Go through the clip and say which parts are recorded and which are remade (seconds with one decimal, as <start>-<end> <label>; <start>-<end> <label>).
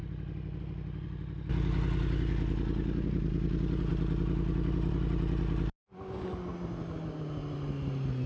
0.0-8.3 recorded